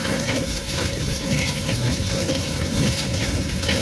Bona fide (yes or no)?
no